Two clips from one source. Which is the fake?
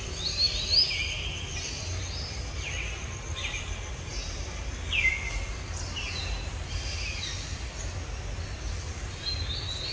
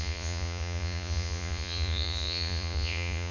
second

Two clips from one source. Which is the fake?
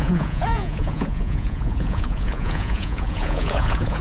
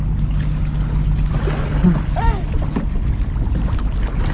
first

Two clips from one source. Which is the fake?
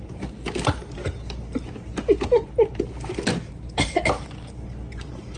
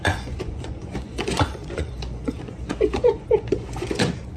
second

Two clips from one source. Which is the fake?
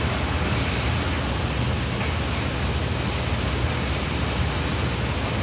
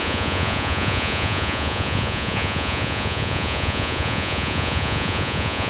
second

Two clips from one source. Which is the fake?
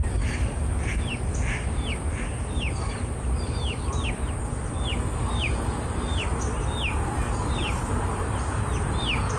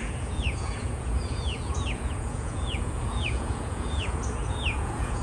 second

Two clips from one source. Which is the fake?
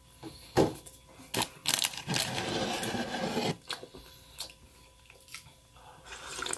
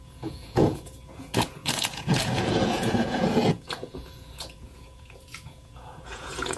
second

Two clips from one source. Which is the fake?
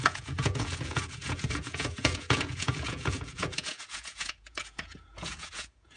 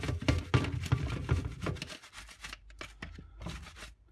first